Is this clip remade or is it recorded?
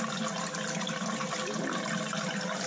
recorded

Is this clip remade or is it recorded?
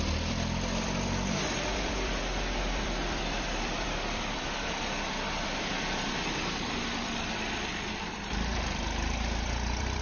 remade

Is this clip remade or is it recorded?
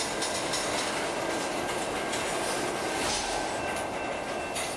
recorded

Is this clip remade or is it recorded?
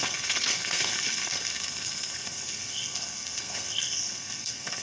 remade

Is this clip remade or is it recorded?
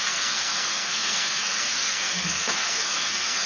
remade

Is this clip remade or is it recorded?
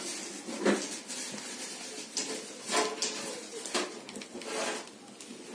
recorded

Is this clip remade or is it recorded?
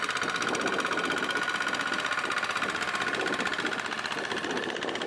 recorded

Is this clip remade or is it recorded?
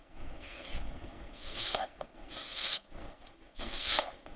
remade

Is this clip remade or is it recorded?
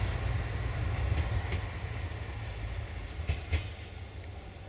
recorded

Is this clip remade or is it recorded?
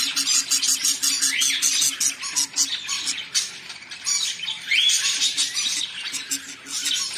recorded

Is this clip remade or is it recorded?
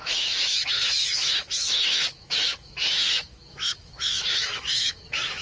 remade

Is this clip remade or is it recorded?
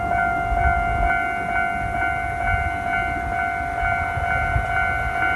recorded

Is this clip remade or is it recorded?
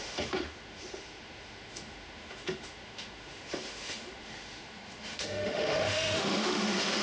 remade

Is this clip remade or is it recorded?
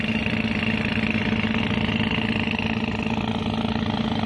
recorded